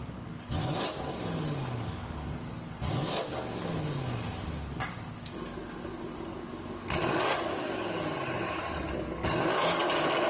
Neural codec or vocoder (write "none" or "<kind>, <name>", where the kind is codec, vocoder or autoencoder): codec, DAC